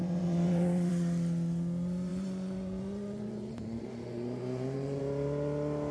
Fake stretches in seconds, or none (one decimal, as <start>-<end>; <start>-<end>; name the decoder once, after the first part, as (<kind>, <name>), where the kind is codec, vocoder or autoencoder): 0.0-0.9 (vocoder, Vocos); 2.1-5.0